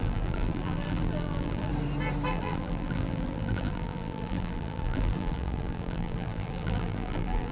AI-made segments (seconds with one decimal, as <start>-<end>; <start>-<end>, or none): 0.0-1.7; 2.3-7.5